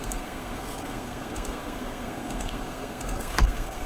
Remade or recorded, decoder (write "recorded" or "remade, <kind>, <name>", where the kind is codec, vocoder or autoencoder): remade, codec, SNAC